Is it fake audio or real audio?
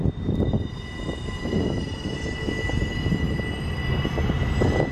real